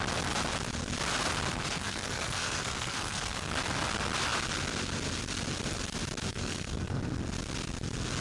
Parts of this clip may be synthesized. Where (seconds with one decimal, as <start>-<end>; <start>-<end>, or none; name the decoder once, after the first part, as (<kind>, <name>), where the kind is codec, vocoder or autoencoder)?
1.5-3.5 (codec, SNAC); 6.3-7.0